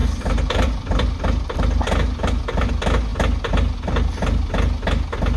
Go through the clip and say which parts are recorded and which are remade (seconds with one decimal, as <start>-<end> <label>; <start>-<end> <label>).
0.0-2.7 remade; 2.7-5.4 recorded